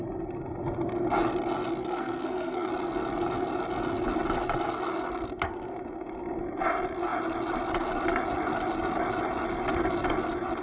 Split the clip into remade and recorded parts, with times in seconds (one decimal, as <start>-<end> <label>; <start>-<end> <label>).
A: 0.0-1.8 recorded; 1.8-2.7 remade; 2.7-10.6 recorded